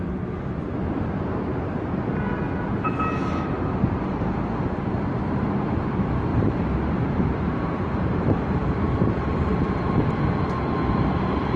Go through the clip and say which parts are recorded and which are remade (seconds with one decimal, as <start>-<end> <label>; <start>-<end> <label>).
0.0-1.5 remade; 1.5-5.2 recorded; 5.2-11.6 remade